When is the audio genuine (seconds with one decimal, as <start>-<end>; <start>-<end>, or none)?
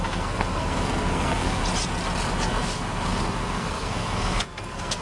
1.6-2.4